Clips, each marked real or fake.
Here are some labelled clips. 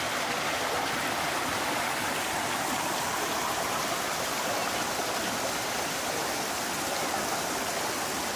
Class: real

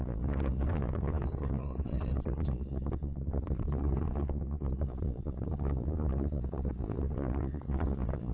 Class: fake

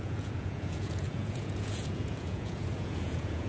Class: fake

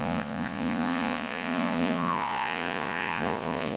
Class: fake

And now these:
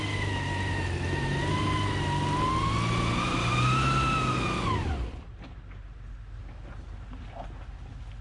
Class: real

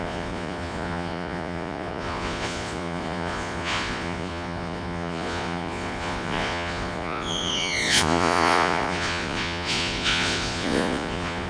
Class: fake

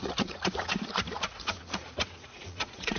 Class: fake